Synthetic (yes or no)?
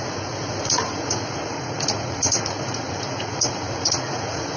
yes